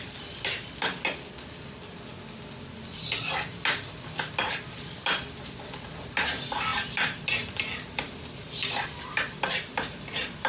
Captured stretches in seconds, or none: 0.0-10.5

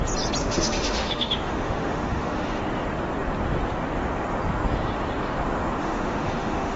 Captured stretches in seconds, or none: 0.0-0.4; 2.6-5.8